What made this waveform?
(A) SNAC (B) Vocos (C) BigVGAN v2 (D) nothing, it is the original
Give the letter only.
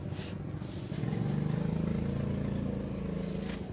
D